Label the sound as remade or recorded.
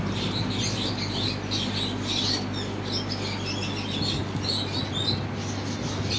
recorded